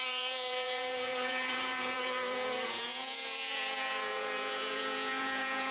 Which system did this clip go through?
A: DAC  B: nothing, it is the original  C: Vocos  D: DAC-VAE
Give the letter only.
C